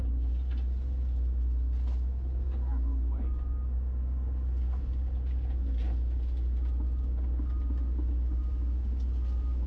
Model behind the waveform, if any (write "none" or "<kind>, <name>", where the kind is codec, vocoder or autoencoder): none